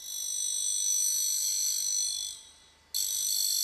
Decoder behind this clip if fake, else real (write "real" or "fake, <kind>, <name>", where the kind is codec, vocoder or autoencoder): real